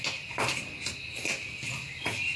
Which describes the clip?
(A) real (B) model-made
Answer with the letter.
A